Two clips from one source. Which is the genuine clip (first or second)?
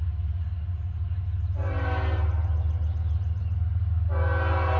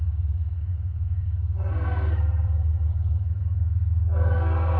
first